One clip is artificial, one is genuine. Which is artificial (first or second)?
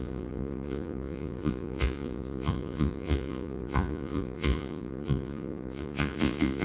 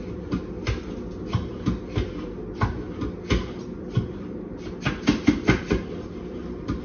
first